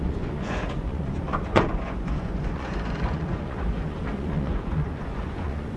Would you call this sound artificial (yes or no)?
yes